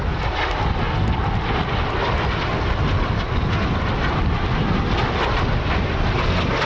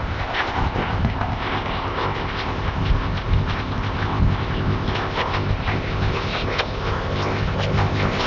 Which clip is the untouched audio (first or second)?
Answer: first